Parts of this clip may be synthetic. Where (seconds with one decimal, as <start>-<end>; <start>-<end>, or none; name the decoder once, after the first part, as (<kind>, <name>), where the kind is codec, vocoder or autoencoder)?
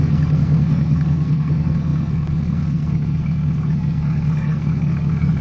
0.0-5.4 (codec, SNAC)